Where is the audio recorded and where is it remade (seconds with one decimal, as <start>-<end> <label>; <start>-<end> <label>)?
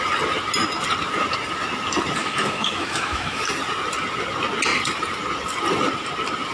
0.0-2.2 recorded; 2.2-3.4 remade; 3.4-6.5 recorded